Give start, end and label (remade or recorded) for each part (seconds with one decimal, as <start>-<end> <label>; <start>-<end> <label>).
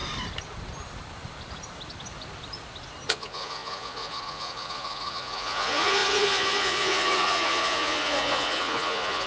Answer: 0.0-3.1 recorded; 3.1-9.3 remade